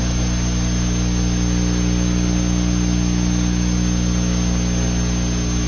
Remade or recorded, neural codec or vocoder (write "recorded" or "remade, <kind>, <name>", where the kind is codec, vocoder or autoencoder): recorded